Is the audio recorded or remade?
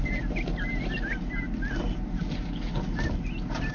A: recorded